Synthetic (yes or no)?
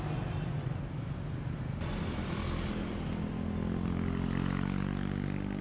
no